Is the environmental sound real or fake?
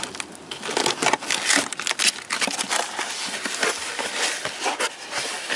real